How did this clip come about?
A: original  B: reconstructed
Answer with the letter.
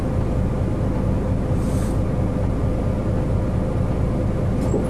A